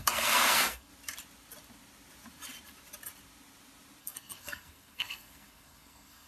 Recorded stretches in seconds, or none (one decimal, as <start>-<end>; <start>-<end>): 0.9-4.0